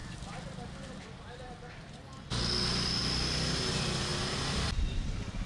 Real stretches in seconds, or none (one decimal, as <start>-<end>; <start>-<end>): 3.0-5.5